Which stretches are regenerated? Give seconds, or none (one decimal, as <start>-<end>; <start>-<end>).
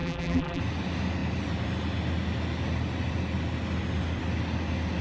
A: 0.0-0.6